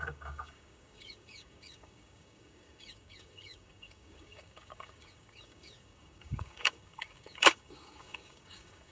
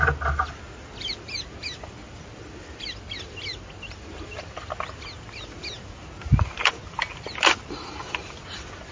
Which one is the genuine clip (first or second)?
second